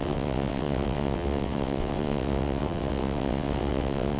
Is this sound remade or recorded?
remade